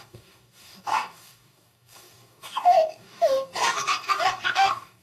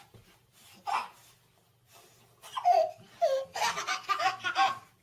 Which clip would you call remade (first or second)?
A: first